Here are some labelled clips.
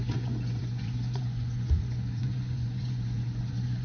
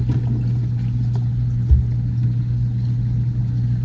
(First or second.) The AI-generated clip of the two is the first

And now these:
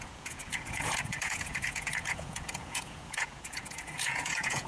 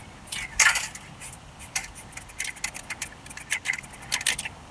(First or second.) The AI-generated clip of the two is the first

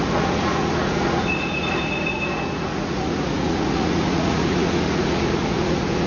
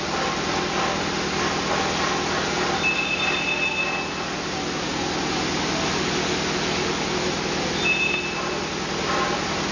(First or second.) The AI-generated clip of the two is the first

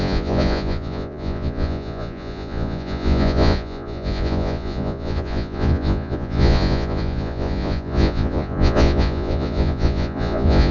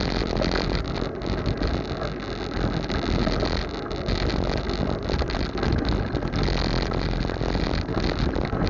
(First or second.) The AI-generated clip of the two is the first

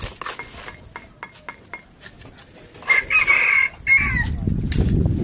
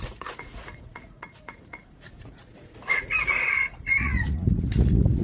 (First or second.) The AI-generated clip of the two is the second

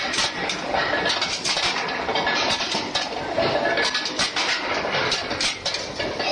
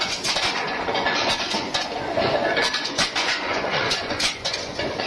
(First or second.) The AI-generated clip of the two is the second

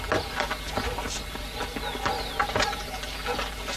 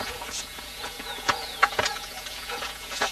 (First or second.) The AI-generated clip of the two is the second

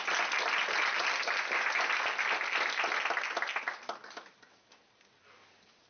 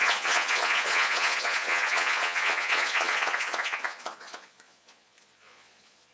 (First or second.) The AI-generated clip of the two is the second